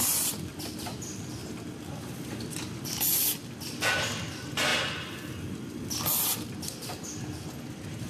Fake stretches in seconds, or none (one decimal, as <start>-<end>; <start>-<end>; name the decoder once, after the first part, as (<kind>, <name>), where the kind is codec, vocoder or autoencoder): none